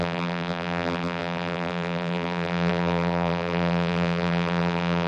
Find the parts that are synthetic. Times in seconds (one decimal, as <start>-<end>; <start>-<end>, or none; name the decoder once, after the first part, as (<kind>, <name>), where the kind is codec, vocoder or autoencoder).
0.0-5.1 (vocoder, BigVGAN v2)